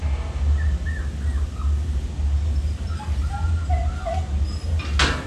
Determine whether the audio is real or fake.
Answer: real